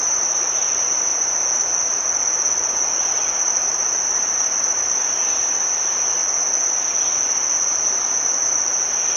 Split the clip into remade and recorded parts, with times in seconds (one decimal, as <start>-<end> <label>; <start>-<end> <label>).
0.0-1.1 remade; 1.1-3.5 recorded; 3.5-6.2 remade; 6.2-9.2 recorded